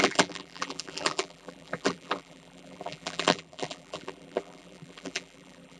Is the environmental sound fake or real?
fake